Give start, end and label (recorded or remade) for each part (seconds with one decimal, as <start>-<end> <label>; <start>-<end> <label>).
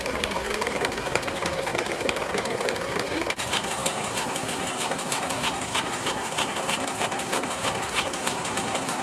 0.0-9.0 remade